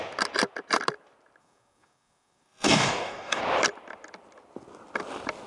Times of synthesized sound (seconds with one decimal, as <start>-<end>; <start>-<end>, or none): 1.4-3.4